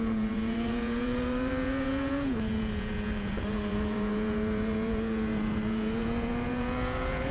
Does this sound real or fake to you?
fake